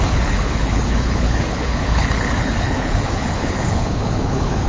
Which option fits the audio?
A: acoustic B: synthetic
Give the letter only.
B